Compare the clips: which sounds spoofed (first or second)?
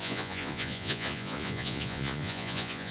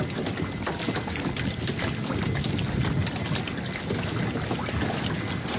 first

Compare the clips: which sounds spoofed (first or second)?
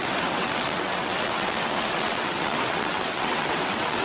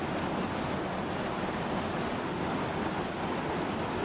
first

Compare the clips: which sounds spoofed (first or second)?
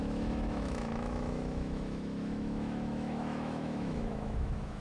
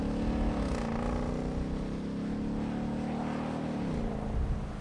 first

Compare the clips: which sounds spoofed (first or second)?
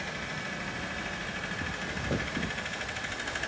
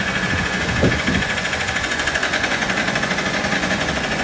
second